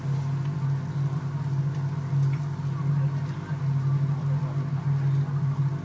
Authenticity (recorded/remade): recorded